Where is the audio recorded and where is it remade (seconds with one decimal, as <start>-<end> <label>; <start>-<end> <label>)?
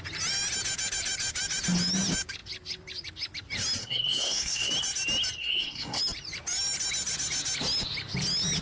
0.0-3.8 recorded; 3.8-4.7 remade; 4.7-5.4 recorded; 5.4-6.0 remade; 6.0-8.6 recorded